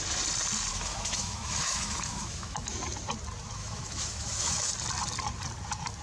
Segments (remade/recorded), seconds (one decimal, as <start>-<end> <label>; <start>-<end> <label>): 0.0-0.7 recorded; 0.7-2.7 remade; 2.7-3.6 recorded; 3.6-4.7 remade; 4.7-6.0 recorded